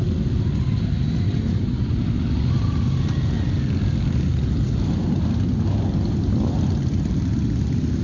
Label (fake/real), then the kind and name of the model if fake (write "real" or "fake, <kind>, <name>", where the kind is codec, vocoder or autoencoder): real